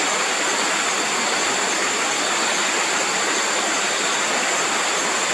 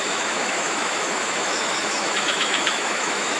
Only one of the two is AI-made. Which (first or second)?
second